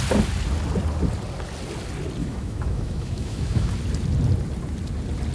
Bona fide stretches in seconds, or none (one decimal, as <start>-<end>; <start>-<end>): 0.0-2.2; 3.7-5.3